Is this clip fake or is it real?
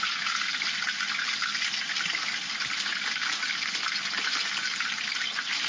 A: real